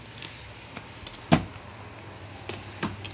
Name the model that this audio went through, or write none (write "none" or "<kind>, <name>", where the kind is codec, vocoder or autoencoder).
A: none